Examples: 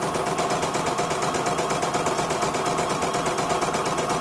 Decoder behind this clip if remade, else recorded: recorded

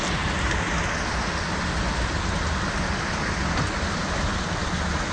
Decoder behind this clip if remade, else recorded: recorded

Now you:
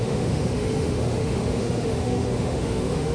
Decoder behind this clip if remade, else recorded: remade, autoencoder, DAC-VAE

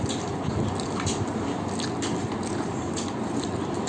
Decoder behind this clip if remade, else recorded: recorded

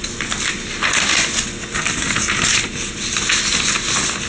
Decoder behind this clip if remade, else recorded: recorded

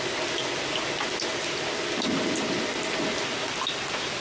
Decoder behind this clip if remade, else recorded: recorded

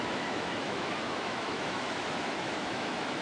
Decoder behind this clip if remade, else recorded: remade, autoencoder, DAC-VAE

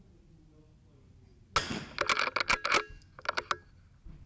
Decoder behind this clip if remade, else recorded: recorded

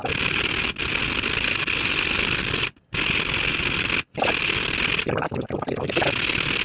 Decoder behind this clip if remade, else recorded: recorded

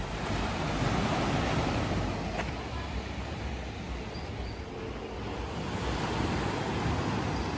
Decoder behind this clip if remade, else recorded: recorded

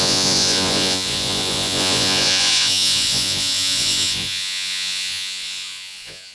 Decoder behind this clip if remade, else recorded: remade, vocoder, Vocos